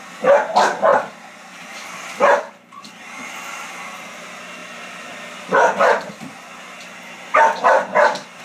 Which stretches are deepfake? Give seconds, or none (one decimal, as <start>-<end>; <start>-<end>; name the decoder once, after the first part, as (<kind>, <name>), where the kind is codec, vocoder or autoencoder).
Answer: 0.9-2.8 (vocoder, BigVGAN v2); 4.6-6.1